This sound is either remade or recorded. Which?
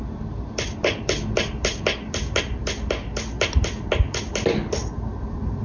recorded